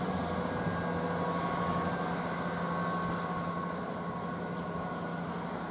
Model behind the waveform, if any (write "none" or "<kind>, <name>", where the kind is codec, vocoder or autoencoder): none